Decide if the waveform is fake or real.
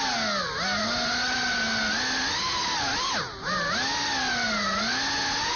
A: real